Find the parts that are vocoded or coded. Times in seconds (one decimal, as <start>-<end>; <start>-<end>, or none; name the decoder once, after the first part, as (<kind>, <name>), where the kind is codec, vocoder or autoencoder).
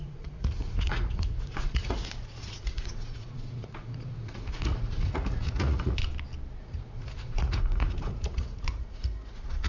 0.0-6.0 (vocoder, Vocos); 6.6-9.7